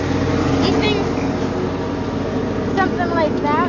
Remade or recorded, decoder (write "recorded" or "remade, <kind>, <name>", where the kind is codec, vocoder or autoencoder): recorded